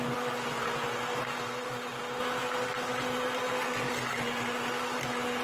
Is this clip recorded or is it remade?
recorded